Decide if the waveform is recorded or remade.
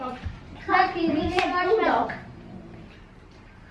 recorded